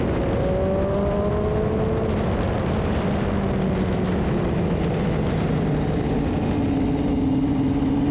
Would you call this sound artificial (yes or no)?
no